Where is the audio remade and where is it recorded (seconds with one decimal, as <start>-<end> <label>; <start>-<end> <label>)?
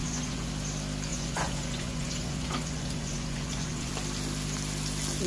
0.0-0.5 remade; 0.5-1.1 recorded; 1.1-3.9 remade; 3.9-5.3 recorded